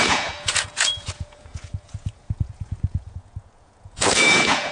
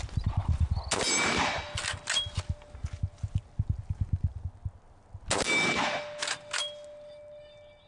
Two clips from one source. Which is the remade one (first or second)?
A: first